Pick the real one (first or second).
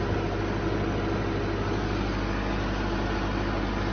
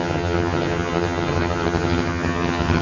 first